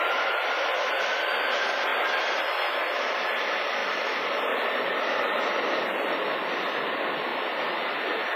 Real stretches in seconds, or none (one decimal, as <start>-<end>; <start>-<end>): 0.0-8.4